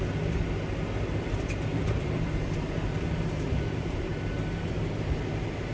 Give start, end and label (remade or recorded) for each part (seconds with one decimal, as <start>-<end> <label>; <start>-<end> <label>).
0.0-4.1 remade; 4.1-4.6 recorded; 4.6-5.7 remade